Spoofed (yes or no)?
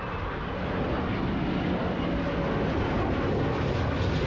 no